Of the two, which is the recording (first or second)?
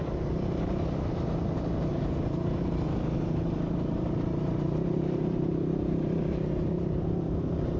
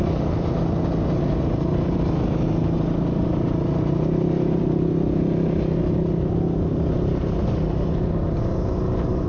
second